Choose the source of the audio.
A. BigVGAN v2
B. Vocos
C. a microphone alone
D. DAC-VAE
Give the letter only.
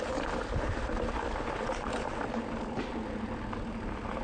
C